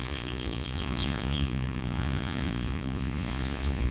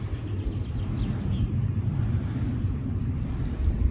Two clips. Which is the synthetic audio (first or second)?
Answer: first